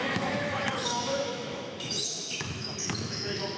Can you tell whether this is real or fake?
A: fake